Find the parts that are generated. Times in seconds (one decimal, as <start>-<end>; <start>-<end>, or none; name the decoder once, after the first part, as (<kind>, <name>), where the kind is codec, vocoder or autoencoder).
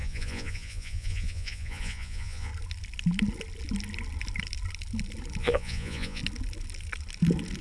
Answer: 0.0-2.5 (vocoder, Vocos); 5.4-6.2